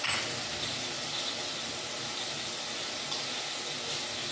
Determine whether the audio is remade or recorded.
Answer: recorded